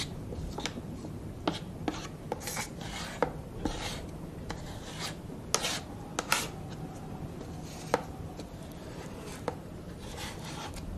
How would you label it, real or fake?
real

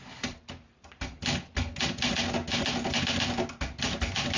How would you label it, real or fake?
real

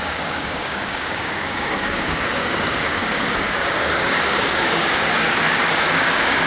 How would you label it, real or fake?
fake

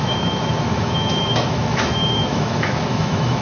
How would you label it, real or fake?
fake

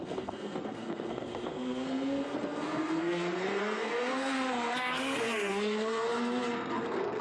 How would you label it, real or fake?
fake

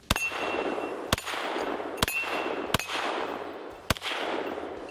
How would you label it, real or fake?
real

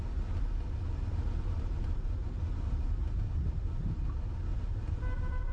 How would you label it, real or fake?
real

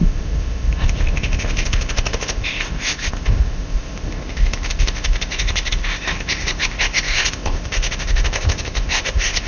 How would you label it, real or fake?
fake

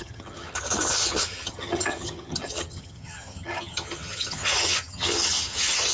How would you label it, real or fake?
fake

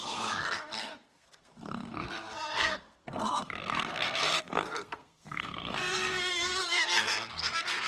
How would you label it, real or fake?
fake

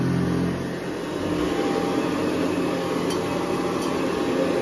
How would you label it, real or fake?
real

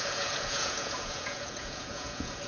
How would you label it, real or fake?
fake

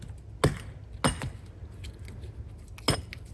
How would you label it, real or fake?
real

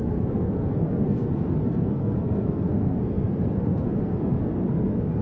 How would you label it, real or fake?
fake